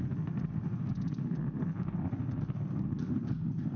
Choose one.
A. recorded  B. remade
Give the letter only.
A